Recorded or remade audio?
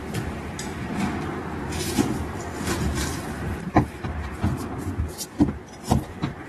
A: remade